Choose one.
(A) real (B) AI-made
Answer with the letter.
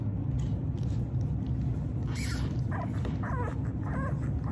A